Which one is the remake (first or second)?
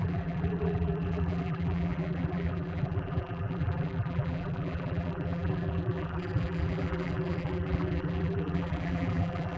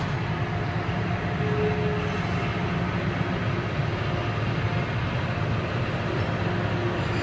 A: first